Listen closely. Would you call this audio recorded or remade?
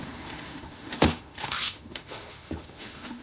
remade